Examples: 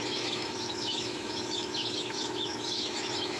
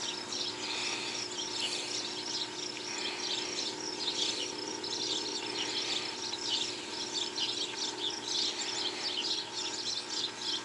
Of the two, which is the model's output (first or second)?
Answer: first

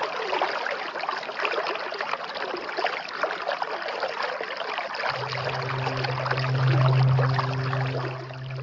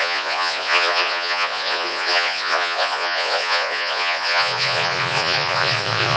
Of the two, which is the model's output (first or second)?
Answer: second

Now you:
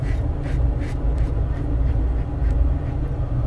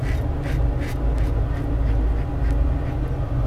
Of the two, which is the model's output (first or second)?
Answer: first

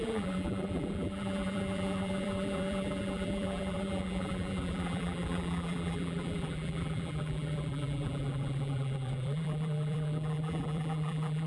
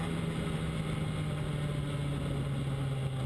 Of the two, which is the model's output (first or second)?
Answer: first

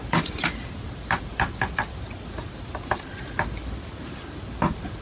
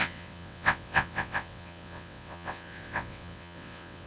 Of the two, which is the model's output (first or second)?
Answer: second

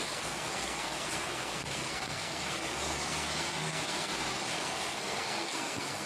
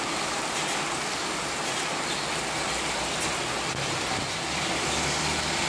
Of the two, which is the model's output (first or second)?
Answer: first